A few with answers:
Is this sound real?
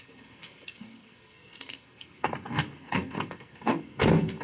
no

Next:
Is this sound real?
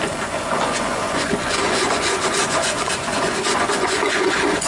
no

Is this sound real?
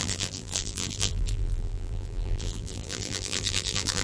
no